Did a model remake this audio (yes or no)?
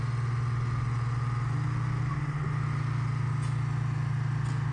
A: no